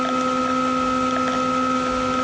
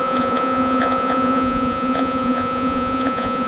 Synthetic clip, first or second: second